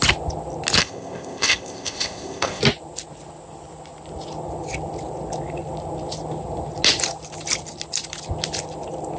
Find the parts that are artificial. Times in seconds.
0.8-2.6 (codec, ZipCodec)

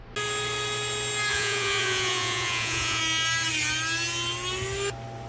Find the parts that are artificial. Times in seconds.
1.3-3.0 (vocoder, Vocos)

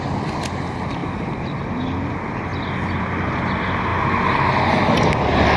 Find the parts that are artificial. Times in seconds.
none

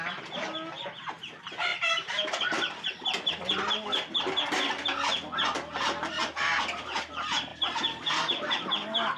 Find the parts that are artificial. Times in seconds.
none

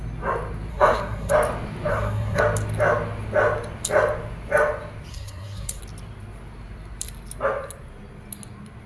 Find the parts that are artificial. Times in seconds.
0.7-1.3 (codec, SNAC); 1.9-2.4; 5.1-5.8